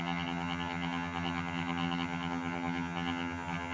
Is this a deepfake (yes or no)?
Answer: yes